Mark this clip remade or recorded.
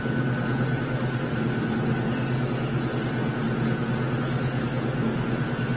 recorded